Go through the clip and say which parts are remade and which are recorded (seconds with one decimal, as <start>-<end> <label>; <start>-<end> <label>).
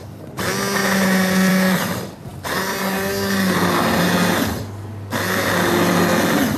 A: 0.0-6.6 recorded